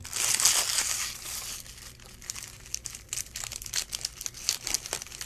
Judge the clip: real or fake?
real